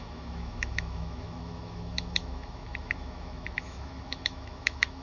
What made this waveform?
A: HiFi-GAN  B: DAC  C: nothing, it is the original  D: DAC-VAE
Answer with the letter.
D